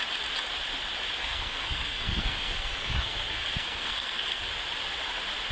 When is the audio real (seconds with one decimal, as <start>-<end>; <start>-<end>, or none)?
0.0-1.2; 4.5-5.5